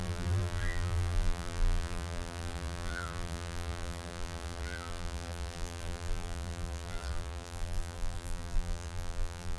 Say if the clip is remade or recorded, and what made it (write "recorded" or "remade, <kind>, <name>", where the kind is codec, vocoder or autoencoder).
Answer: remade, vocoder, BigVGAN v2